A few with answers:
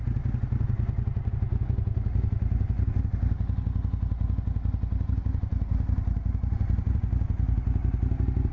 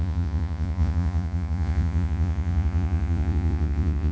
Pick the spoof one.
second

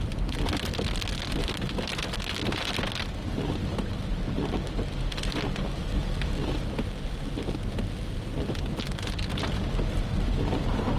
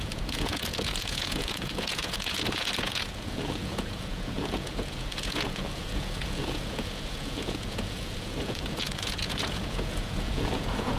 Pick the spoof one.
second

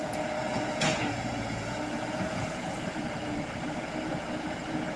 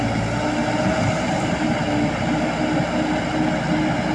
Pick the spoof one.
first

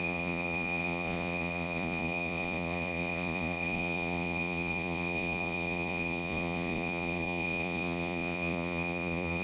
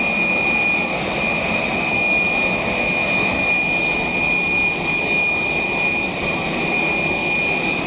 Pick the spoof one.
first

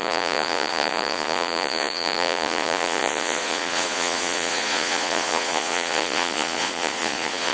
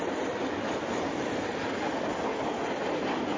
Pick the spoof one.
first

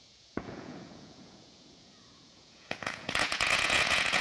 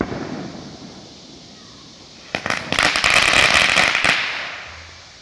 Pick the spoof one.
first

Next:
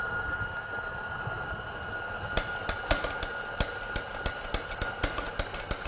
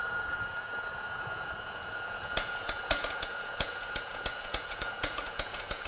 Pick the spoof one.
second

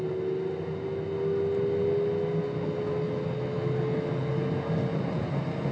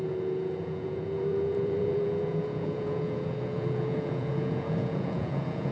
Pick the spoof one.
second